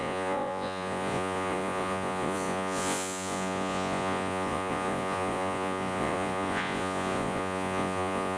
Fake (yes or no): yes